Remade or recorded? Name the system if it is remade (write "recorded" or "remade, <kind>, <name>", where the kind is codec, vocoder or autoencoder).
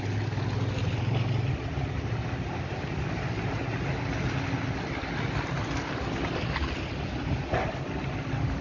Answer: recorded